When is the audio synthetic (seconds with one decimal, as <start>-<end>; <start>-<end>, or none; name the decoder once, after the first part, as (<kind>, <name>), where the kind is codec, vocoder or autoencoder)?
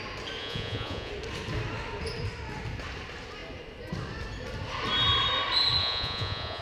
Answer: 0.4-1.1 (vocoder, Vocos); 5.8-6.6